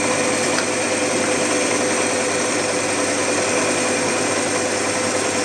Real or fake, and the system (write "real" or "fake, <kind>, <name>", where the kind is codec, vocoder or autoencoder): real